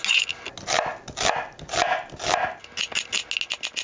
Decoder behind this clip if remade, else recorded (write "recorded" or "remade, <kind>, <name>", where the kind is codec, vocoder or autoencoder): recorded